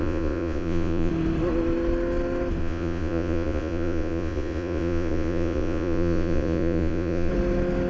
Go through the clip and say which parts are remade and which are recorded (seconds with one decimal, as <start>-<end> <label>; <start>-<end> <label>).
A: 0.0-1.1 remade; 1.1-2.6 recorded; 2.6-7.3 remade; 7.3-7.9 recorded